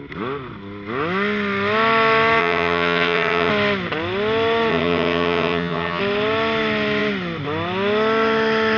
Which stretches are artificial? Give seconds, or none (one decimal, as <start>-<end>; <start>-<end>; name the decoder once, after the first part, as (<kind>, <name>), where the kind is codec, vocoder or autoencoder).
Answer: 2.4-3.5 (vocoder, HiFi-GAN); 4.7-6.0